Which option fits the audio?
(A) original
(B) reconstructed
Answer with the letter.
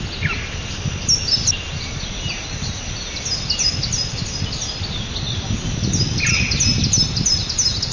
A